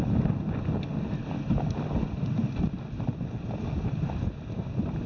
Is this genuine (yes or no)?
yes